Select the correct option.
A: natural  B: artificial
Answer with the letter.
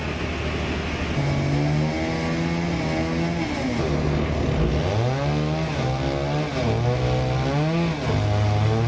A